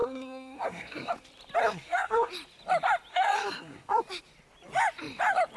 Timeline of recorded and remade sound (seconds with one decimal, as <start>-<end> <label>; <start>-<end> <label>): 0.0-1.1 remade; 1.1-1.6 recorded; 1.6-2.3 remade; 2.3-3.1 recorded; 3.1-4.0 remade; 4.0-5.6 recorded